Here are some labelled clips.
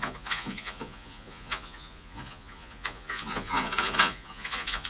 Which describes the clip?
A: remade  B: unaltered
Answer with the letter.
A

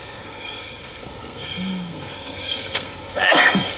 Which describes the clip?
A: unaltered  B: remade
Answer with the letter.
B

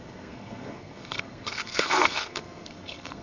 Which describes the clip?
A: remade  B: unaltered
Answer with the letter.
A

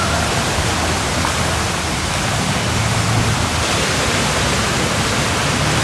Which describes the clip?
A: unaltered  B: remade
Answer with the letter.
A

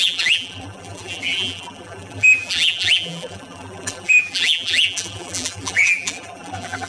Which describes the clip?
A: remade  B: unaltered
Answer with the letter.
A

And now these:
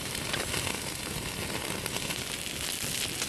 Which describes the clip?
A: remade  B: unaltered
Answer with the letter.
B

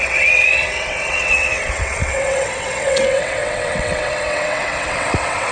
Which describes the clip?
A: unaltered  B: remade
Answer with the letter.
B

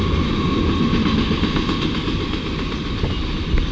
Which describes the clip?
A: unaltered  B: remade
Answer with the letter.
A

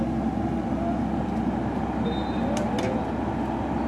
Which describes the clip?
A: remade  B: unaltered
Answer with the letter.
B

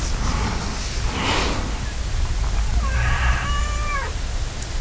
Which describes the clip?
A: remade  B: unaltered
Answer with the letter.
B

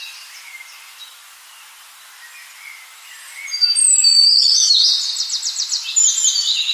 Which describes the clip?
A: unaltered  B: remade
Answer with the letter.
A